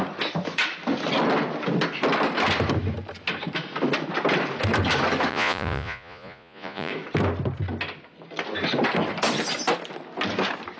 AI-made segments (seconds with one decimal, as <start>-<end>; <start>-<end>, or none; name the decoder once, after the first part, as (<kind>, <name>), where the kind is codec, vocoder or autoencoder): 5.3-6.9 (vocoder, Vocos)